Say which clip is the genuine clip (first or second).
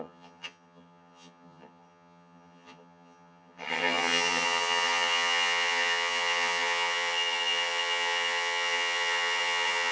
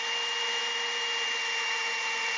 second